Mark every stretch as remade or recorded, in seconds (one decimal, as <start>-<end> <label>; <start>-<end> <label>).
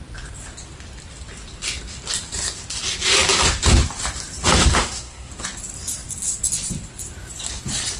0.0-4.7 recorded; 4.7-5.3 remade; 5.3-8.0 recorded